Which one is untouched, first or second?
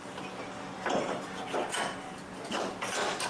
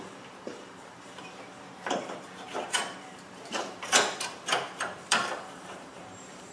first